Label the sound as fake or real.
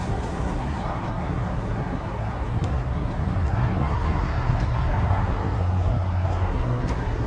fake